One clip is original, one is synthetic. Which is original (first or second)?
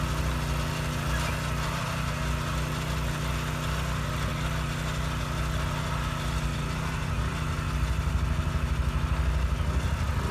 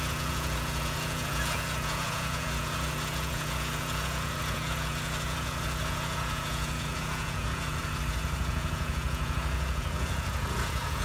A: first